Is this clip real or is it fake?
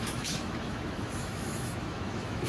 fake